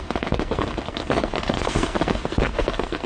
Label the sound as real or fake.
fake